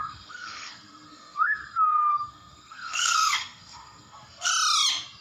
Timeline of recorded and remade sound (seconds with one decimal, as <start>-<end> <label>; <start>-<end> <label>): 0.0-1.6 remade; 1.6-2.1 recorded; 2.1-4.5 remade; 4.5-5.2 recorded